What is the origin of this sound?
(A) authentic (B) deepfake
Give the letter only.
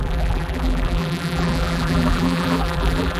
B